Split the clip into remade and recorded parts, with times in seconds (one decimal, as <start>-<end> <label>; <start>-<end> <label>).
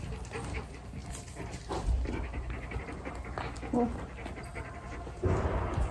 0.0-5.9 recorded